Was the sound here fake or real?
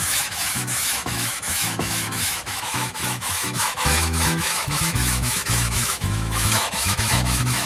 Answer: fake